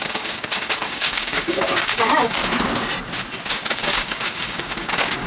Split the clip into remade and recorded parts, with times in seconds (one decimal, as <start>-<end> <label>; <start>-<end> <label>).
0.0-2.4 remade; 2.4-3.5 recorded; 3.5-5.3 remade